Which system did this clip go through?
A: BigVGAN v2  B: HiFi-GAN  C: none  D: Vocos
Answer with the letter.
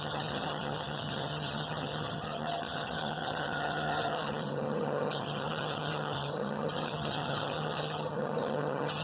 B